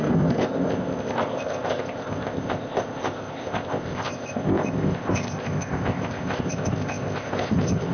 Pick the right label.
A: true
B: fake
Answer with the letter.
B